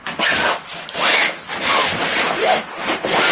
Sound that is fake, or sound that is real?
real